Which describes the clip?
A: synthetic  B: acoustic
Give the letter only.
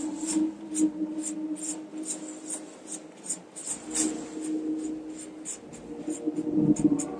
B